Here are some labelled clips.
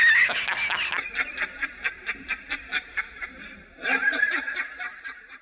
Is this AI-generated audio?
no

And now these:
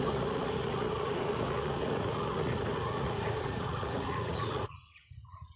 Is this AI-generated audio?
yes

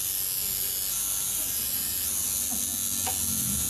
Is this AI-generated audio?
no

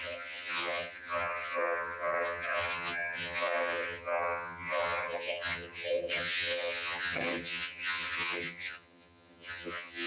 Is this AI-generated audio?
yes